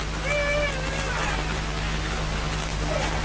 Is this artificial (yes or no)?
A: no